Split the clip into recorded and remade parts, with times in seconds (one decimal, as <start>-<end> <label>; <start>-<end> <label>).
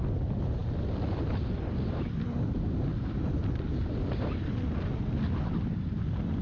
0.0-6.4 recorded